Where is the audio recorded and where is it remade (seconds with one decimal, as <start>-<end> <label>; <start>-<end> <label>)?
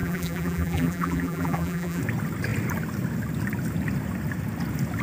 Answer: 0.0-2.0 remade; 2.0-5.0 recorded